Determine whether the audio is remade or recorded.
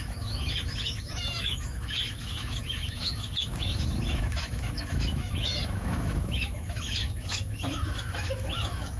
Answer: remade